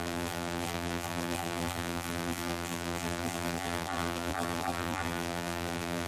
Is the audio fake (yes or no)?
yes